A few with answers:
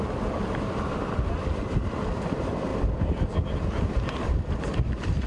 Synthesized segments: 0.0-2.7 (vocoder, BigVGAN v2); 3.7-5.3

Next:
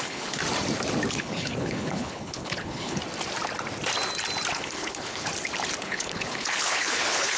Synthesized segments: 0.0-0.4 (codec, HILCodec); 1.1-3.0; 4.5-5.3; 5.8-7.4

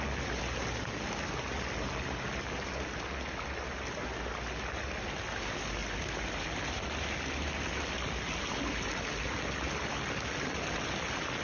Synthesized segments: none

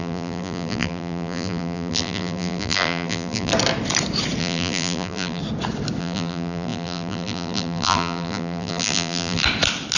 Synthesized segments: 0.0-3.5 (vocoder, BigVGAN v2); 4.4-5.4; 6.0-9.4